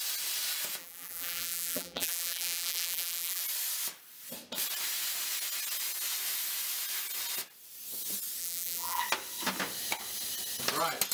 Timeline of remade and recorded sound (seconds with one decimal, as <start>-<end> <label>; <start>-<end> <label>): 0.0-0.8 recorded; 0.8-3.4 remade; 3.4-8.4 recorded; 8.4-9.0 remade; 9.0-11.1 recorded